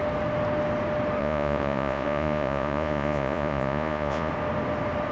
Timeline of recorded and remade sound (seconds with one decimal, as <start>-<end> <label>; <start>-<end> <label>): 0.0-1.2 recorded; 1.2-4.3 remade; 4.3-5.1 recorded